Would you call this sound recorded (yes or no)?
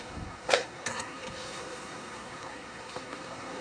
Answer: no